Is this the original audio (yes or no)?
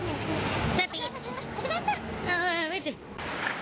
no